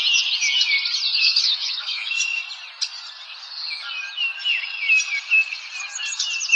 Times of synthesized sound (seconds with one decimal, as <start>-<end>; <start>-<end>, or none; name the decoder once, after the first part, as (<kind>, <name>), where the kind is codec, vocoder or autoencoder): 1.2-2.4 (autoencoder, DAC-VAE)